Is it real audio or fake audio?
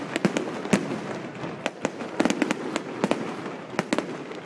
real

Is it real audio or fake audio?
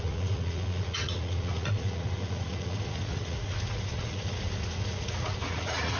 fake